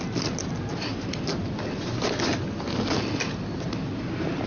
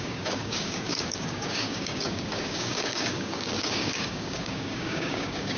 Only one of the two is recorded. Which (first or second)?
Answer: first